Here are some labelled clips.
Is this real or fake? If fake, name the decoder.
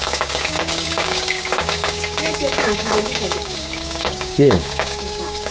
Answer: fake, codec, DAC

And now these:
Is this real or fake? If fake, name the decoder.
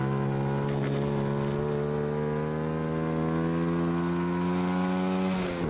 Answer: real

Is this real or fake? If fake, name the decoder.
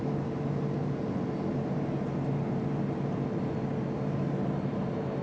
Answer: real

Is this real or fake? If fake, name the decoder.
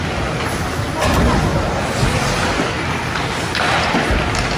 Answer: real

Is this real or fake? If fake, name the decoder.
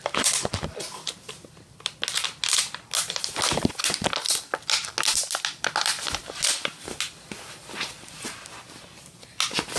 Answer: real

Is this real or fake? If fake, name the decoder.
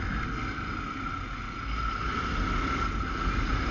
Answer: real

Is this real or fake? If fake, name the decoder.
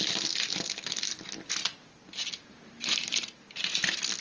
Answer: real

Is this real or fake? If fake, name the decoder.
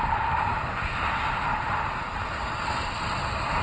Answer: real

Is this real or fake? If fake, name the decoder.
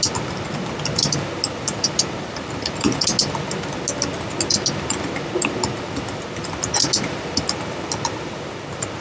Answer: real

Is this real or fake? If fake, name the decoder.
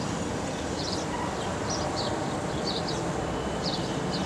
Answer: fake, vocoder, BigVGAN v2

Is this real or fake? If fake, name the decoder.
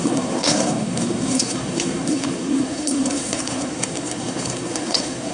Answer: fake, codec, SNAC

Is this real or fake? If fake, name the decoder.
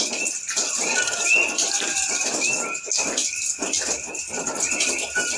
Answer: real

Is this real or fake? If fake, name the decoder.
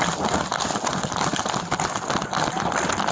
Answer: real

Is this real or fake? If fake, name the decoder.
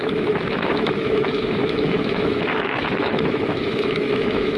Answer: fake, autoencoder, DAC-VAE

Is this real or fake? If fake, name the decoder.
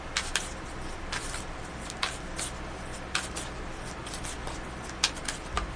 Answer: real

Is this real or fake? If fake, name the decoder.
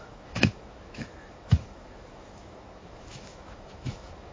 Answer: fake, autoencoder, DAC-VAE